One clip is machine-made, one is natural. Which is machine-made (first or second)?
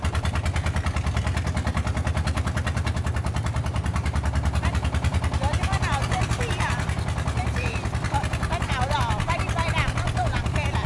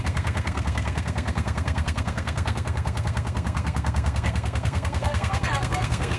second